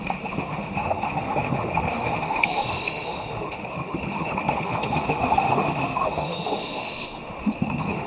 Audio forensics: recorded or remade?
remade